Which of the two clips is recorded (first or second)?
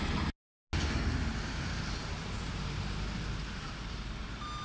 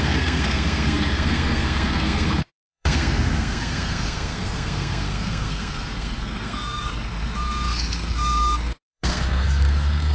first